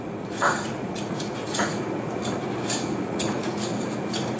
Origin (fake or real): fake